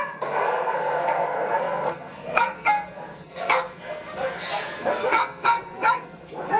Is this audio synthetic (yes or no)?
yes